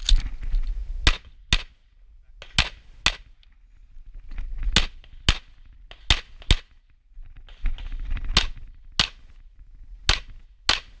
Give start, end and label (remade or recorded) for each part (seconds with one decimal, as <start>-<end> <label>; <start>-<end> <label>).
0.0-11.0 recorded